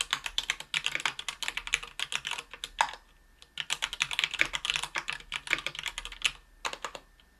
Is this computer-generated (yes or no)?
no